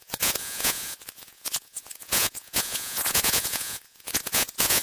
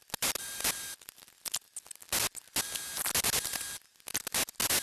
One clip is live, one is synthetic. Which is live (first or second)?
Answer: second